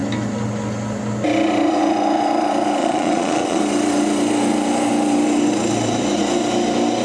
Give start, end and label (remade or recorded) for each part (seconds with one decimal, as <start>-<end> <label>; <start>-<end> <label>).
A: 0.0-2.8 recorded; 2.8-3.6 remade; 3.6-7.0 recorded